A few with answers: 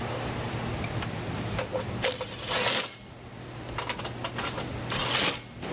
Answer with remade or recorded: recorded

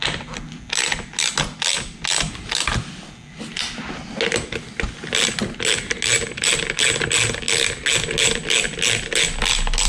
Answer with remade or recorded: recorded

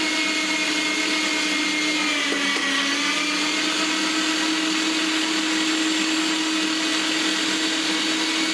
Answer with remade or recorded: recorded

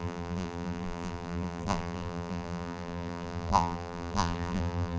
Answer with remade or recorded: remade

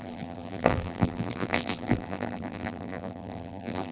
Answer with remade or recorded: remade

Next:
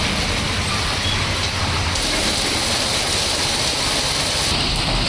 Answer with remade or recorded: remade